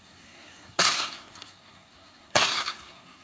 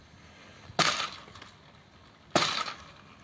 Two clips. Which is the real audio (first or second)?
second